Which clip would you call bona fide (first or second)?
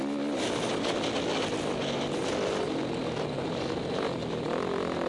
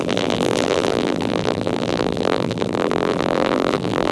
first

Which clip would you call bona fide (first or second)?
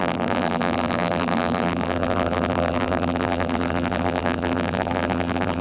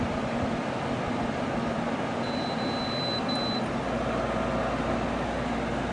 second